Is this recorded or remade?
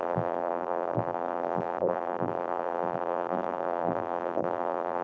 remade